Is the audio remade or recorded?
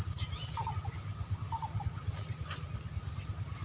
recorded